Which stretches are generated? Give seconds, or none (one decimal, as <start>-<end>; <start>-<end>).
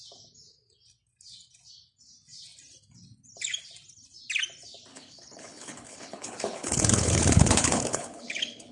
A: 4.9-8.7